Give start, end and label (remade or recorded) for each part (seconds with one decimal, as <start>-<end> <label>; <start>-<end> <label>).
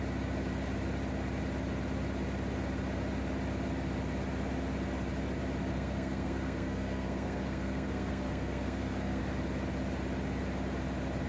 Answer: 0.0-5.7 recorded; 5.7-9.2 remade; 9.2-11.3 recorded